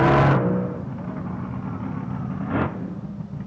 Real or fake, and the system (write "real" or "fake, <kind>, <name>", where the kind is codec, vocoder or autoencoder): real